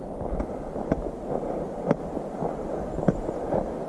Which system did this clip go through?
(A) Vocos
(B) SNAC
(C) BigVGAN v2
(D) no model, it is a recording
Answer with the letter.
D